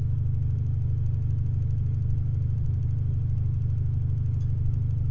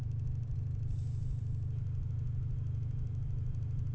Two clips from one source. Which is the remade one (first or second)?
second